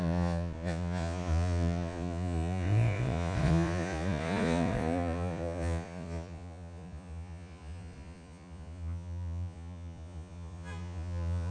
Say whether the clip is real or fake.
fake